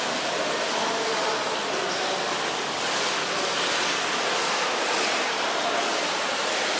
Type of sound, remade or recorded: recorded